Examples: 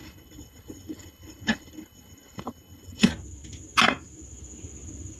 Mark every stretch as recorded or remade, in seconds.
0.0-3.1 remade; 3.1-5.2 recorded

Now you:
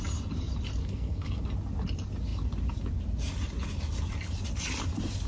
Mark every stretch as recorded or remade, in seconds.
0.0-0.8 recorded; 0.8-1.4 remade; 1.4-5.3 recorded

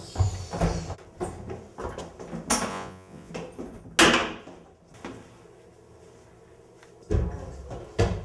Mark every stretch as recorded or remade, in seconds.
0.0-2.7 recorded; 2.7-3.3 remade; 3.3-8.2 recorded

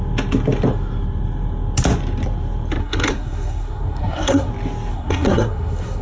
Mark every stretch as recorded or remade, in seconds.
0.0-2.8 recorded; 2.8-4.5 remade; 4.5-4.9 recorded; 4.9-6.0 remade

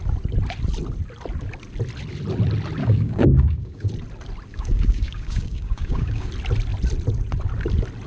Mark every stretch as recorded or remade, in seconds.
0.0-2.8 recorded; 2.8-3.9 remade; 3.9-4.5 recorded; 4.5-6.3 remade; 6.3-8.1 recorded

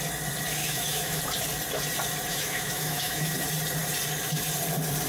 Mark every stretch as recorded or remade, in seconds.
0.0-0.6 recorded; 0.6-1.2 remade; 1.2-2.3 recorded; 2.3-3.3 remade; 3.3-5.1 recorded